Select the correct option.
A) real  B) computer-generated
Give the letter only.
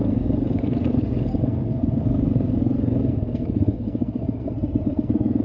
B